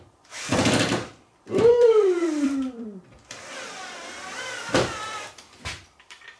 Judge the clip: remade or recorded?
remade